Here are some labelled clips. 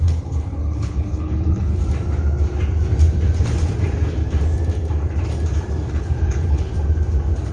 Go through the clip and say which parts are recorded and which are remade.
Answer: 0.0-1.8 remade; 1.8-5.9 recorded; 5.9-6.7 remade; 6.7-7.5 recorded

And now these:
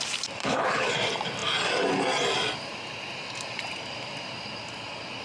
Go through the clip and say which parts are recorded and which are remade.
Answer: 0.0-0.4 recorded; 0.4-0.9 remade; 0.9-5.2 recorded

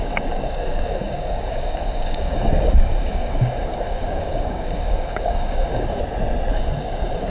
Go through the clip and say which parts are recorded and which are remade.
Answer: 0.0-6.0 remade; 6.0-6.5 recorded; 6.5-7.3 remade

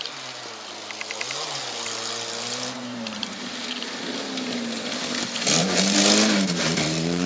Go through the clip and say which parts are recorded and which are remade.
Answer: 0.0-2.8 recorded; 2.8-3.4 remade; 3.4-5.6 recorded; 5.6-7.3 remade